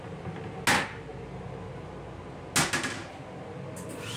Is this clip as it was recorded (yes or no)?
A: yes